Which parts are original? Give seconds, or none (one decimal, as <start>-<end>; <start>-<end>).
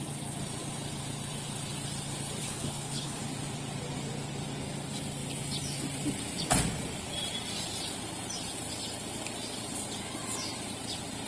0.0-2.4; 3.2-11.3